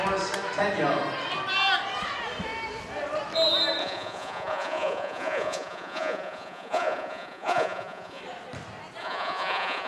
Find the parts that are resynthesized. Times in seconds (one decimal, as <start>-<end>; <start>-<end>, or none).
3.8-8.2; 9.0-9.9